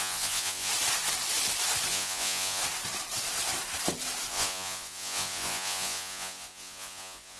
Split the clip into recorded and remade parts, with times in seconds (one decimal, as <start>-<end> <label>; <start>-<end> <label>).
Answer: 0.0-0.7 remade; 0.7-1.9 recorded; 1.9-2.6 remade; 2.6-4.3 recorded; 4.3-7.4 remade

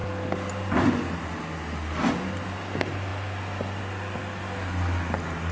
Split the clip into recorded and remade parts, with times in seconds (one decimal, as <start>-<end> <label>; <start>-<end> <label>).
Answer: 0.0-5.5 recorded

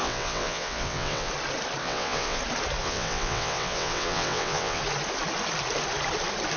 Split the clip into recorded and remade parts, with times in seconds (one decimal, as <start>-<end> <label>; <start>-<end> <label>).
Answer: 0.0-1.3 remade; 1.3-1.8 recorded; 1.8-2.4 remade; 2.4-2.8 recorded; 2.8-4.8 remade; 4.8-6.6 recorded

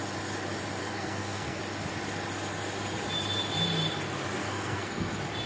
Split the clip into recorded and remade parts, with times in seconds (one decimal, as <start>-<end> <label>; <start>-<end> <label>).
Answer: 0.0-0.8 recorded; 0.8-1.6 remade; 1.6-4.4 recorded; 4.4-5.1 remade; 5.1-5.5 recorded

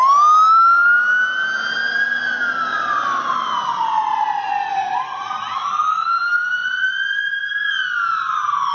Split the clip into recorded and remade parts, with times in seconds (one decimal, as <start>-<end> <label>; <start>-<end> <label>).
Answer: 0.0-8.7 recorded

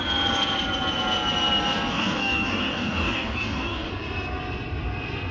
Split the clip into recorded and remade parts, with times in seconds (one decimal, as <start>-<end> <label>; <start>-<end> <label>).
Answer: 0.0-1.9 recorded; 1.9-3.9 remade; 3.9-5.3 recorded

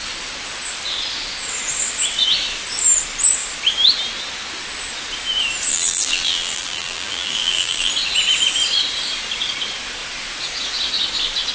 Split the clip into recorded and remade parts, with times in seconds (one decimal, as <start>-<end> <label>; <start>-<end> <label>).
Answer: 0.0-5.7 recorded; 5.7-7.9 remade; 7.9-11.5 recorded